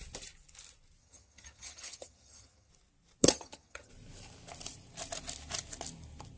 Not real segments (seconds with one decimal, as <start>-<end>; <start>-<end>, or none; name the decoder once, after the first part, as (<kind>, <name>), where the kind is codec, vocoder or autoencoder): 1.0-2.7 (vocoder, HiFi-GAN); 3.2-3.9